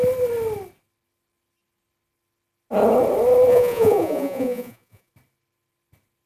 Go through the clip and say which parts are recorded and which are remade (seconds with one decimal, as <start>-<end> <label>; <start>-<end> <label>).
0.0-3.5 recorded; 3.5-5.1 remade; 5.1-6.3 recorded